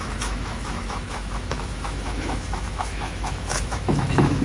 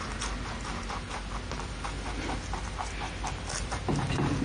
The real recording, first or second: second